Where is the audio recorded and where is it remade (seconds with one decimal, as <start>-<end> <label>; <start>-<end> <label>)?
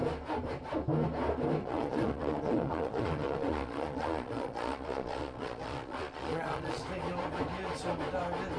0.0-1.6 recorded; 1.6-6.8 remade; 6.8-8.6 recorded